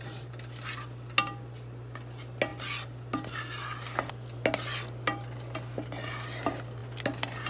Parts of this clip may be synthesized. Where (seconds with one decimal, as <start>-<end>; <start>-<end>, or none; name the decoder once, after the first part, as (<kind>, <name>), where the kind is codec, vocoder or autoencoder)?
none